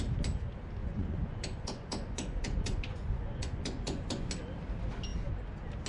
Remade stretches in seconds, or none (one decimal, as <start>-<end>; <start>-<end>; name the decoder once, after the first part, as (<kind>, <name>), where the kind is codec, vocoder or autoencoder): 0.8-4.3 (vocoder, Vocos)